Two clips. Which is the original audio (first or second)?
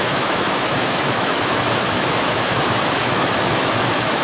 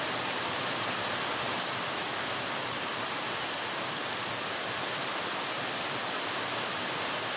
second